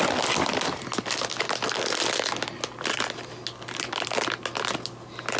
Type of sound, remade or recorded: recorded